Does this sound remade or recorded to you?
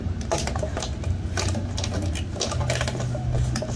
recorded